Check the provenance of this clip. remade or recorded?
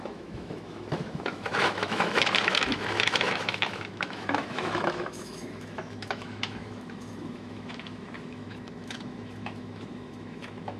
remade